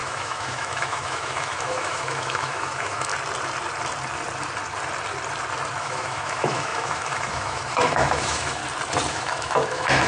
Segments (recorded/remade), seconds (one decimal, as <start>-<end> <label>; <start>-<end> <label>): 0.0-3.1 remade; 3.1-5.8 recorded; 5.8-8.6 remade; 8.6-9.1 recorded; 9.1-10.1 remade